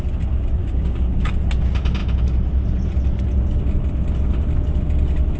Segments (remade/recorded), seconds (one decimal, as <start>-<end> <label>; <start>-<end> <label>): 0.0-0.6 recorded; 0.6-1.3 remade; 1.3-5.4 recorded